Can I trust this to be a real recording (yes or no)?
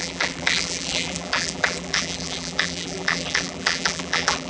no